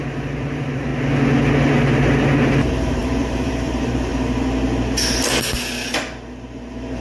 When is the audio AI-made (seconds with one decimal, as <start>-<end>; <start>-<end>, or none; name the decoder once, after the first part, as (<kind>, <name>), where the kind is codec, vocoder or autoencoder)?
0.0-0.9 (vocoder, BigVGAN v2); 2.5-4.1